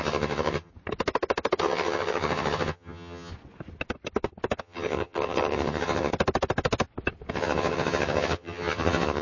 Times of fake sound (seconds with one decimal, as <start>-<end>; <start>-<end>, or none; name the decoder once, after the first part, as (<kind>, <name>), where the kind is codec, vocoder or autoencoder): 0.0-0.7 (vocoder, HiFi-GAN); 1.6-3.3; 4.6-6.1; 7.3-9.2